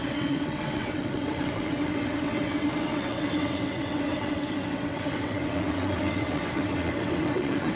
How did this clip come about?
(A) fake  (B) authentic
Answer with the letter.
A